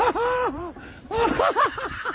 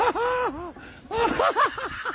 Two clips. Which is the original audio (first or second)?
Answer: second